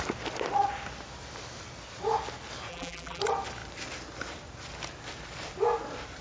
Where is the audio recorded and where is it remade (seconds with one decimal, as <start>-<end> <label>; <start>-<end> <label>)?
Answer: 0.0-2.7 recorded; 2.7-3.2 remade; 3.2-6.2 recorded